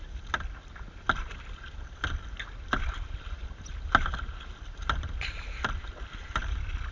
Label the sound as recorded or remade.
recorded